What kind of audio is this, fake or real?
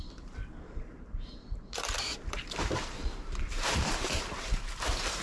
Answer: fake